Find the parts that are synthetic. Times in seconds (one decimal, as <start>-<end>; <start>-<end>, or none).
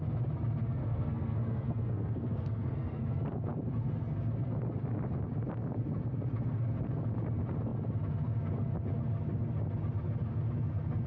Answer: 0.8-3.0